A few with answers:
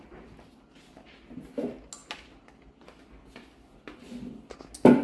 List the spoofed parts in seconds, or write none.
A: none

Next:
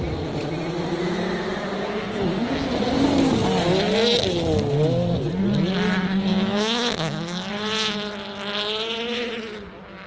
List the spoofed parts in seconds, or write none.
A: 6.3-7.5